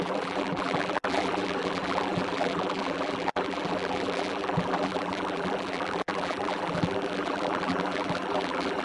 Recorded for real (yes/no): no